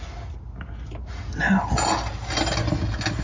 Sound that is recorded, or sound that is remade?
recorded